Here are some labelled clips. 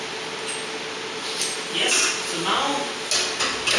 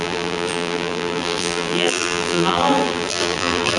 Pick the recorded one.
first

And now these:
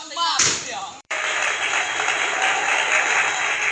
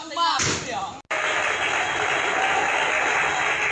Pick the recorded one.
second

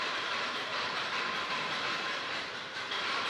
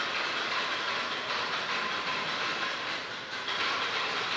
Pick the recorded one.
second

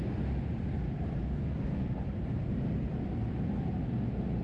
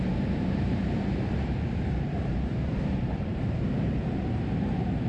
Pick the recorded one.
first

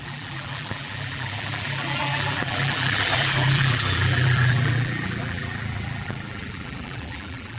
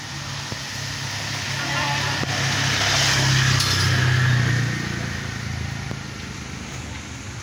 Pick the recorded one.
second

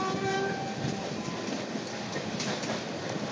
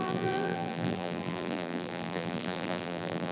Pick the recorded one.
first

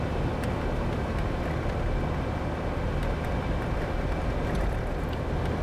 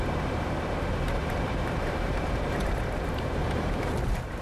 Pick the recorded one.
first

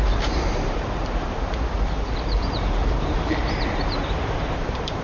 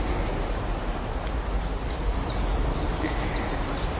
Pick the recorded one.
second